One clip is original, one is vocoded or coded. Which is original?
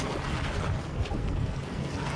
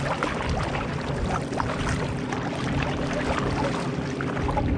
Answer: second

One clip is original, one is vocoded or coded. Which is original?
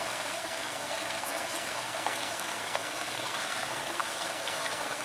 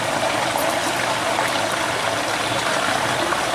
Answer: second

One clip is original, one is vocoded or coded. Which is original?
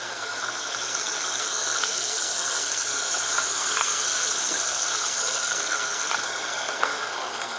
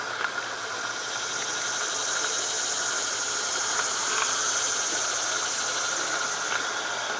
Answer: second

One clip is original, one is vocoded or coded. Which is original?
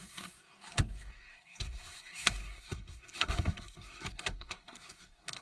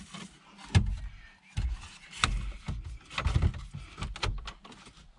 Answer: second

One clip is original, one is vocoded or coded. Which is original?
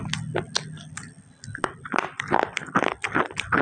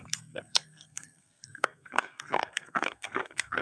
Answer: first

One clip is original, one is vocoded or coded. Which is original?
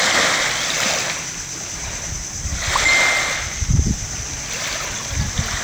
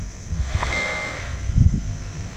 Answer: first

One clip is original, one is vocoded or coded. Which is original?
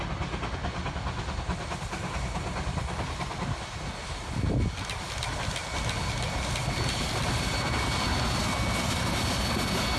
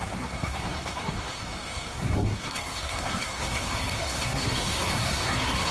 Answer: first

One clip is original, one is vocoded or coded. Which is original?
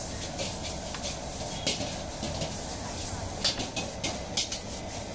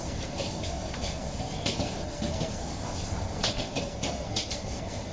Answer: first